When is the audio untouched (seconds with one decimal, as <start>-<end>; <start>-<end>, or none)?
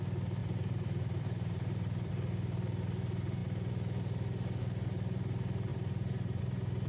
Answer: 0.0-0.4; 2.1-5.7; 6.4-6.9